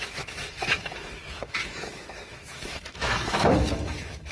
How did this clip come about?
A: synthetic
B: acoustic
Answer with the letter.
A